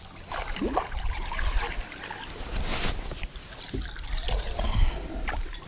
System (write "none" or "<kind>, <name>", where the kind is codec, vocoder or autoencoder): none